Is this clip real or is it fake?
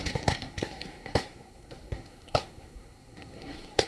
fake